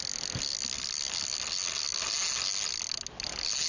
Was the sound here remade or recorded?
recorded